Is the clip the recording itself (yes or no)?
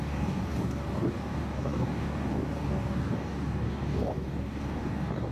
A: no